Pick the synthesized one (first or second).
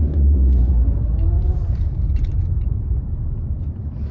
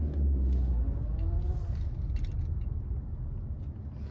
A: first